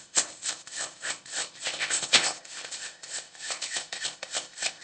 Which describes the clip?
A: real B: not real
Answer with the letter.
B